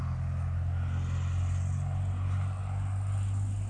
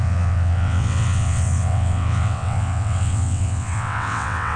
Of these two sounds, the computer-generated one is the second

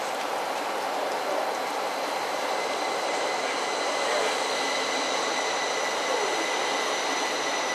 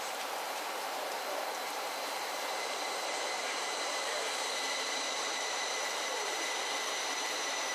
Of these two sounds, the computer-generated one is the second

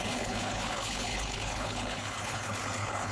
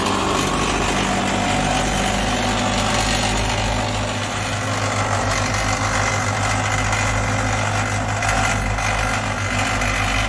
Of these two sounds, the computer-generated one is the first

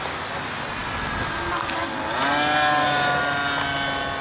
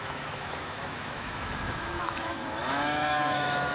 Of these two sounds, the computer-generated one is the second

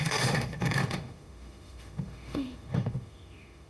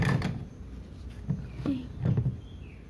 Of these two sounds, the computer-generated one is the first